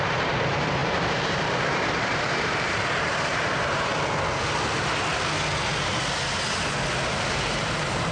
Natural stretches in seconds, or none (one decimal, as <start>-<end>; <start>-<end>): 3.9-7.1